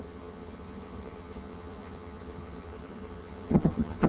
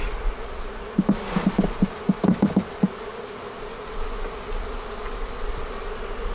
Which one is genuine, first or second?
second